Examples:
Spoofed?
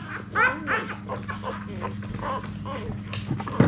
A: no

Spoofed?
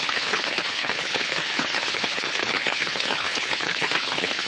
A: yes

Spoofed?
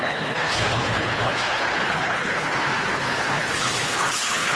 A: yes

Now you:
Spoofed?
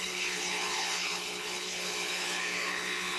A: yes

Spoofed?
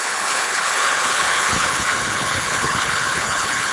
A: yes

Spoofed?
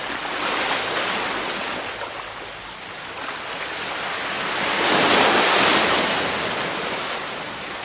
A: no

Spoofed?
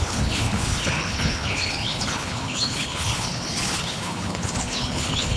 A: yes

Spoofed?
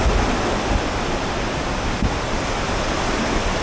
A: no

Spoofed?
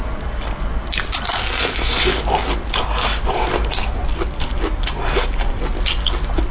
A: no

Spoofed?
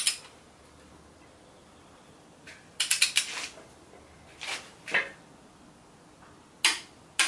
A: no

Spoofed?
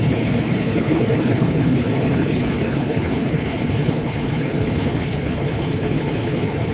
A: yes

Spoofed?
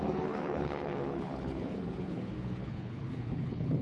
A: yes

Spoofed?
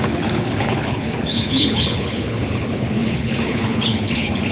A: yes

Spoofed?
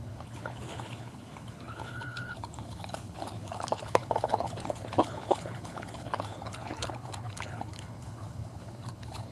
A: yes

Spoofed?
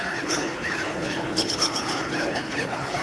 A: yes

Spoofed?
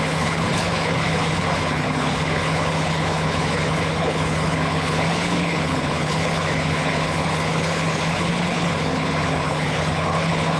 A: yes